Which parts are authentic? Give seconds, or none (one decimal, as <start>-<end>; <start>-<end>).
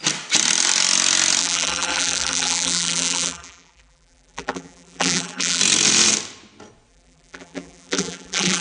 0.0-1.4; 5.6-6.9